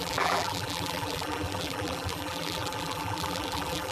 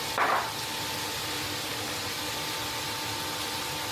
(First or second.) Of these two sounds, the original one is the second